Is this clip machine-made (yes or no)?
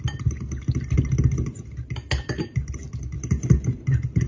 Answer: no